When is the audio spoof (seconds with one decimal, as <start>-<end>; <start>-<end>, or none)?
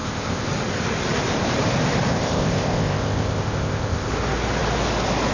0.0-0.5; 2.1-4.1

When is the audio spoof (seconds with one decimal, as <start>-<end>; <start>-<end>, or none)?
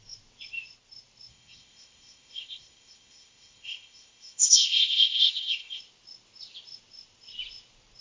1.3-5.8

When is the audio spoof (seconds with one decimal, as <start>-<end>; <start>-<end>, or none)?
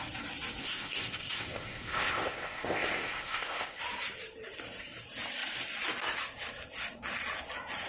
0.6-3.8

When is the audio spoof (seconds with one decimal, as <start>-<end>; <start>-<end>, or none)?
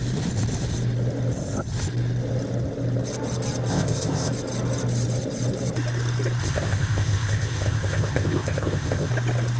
3.7-4.3; 6.4-9.1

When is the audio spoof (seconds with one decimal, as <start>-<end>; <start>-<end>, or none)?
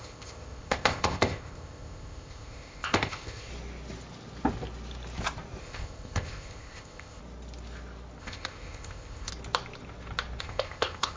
0.0-3.5; 5.6-7.2; 8.2-9.3; 10.4-11.2